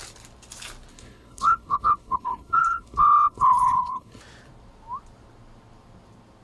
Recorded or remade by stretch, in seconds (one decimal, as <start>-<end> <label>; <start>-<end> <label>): 0.0-0.9 recorded; 0.9-4.2 remade; 4.2-6.4 recorded